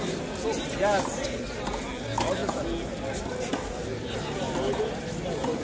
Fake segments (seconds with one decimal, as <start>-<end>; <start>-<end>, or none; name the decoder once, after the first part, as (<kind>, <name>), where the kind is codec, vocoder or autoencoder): none